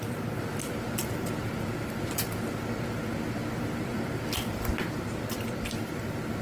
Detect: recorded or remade remade